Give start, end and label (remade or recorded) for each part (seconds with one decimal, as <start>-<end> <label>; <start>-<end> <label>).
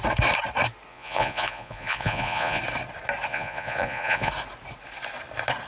0.0-0.9 recorded; 0.9-2.6 remade; 2.6-3.3 recorded; 3.3-4.3 remade; 4.3-5.7 recorded